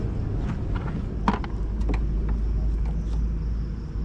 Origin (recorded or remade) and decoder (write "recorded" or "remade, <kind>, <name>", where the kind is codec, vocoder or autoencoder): recorded